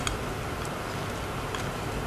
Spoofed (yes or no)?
no